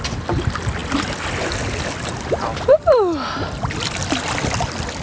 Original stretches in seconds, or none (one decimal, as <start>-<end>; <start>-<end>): 0.0-5.0